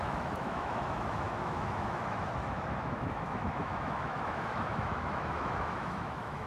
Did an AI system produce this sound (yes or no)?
yes